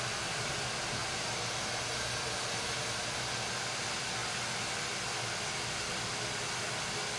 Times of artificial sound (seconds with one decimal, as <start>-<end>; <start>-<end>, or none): none